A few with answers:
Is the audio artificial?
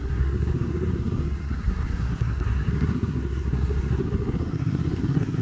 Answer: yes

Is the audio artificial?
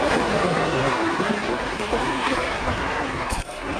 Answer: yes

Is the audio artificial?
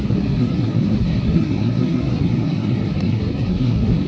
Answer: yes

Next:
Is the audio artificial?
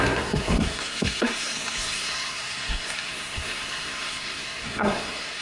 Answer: yes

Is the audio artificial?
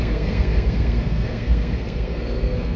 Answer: yes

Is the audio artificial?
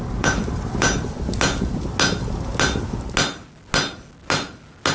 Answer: no